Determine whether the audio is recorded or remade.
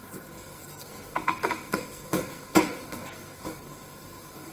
remade